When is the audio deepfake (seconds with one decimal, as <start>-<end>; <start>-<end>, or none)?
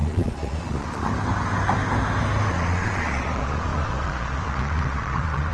0.0-1.1; 2.5-5.5